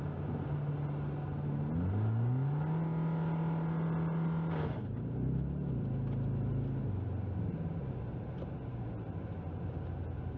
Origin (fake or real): real